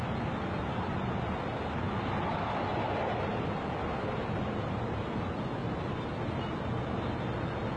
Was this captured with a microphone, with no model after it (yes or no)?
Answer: yes